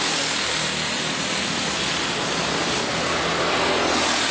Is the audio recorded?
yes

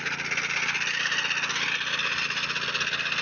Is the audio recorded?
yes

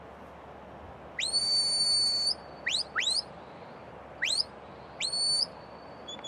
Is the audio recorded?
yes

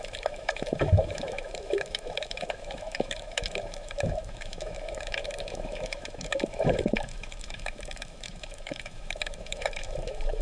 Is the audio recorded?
no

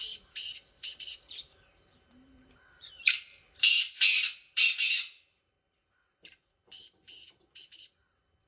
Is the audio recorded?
no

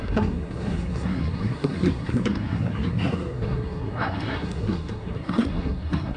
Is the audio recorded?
no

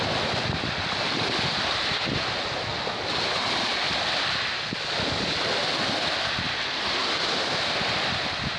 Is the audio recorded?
yes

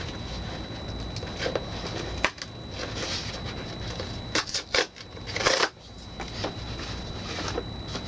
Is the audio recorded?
yes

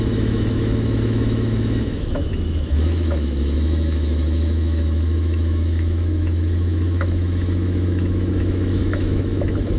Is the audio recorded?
no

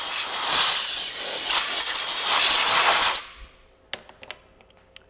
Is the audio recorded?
yes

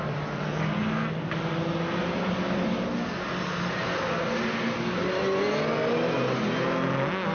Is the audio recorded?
yes